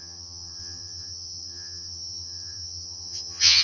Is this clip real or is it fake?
fake